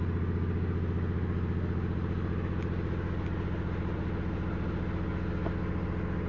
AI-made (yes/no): no